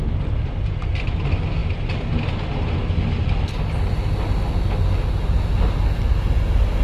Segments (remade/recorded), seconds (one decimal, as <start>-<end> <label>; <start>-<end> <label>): 0.0-6.8 recorded